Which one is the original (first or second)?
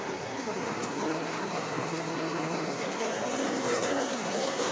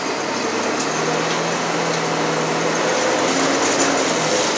second